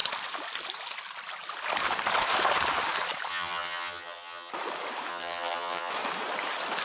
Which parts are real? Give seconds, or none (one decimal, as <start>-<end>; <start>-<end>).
0.0-3.3; 4.5-5.1; 5.9-6.8